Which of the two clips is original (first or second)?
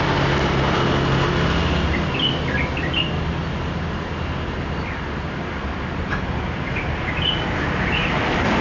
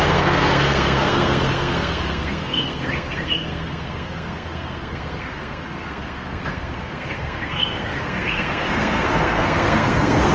first